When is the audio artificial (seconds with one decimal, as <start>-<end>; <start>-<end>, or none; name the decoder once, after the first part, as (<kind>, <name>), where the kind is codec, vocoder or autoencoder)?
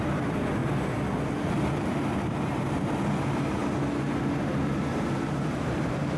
0.0-0.6 (vocoder, BigVGAN v2); 1.5-3.6; 4.5-6.2